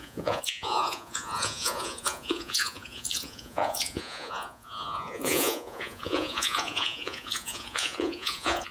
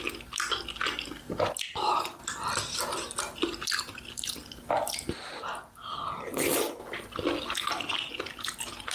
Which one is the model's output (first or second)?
first